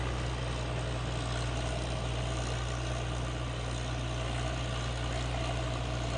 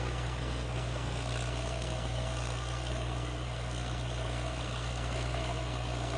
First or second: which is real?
first